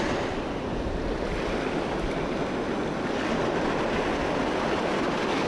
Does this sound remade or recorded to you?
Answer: recorded